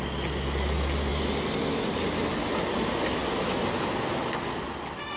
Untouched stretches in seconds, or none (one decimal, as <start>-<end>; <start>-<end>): 0.0-5.2